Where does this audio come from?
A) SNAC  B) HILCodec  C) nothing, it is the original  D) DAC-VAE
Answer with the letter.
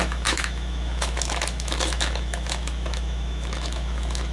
D